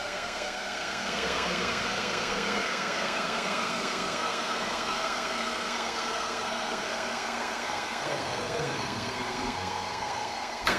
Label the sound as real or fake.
fake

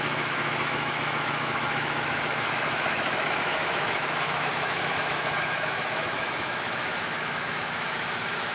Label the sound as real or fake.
fake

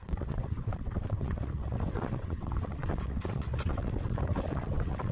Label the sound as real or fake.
fake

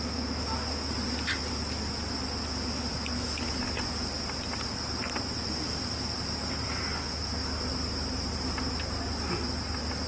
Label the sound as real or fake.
real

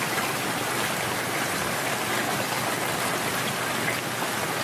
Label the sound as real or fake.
real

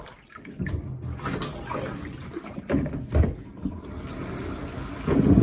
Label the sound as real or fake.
real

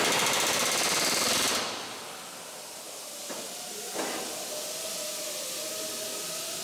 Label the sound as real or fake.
real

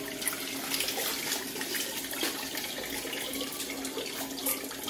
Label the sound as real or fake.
real